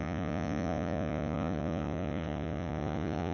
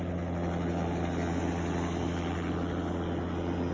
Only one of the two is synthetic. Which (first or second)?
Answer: first